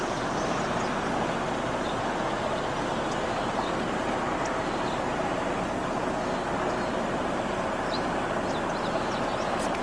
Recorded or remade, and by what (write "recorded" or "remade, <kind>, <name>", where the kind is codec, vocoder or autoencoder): recorded